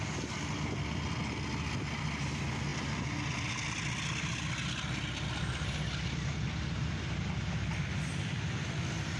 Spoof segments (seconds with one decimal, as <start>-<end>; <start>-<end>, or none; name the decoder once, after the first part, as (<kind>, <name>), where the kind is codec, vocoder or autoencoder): none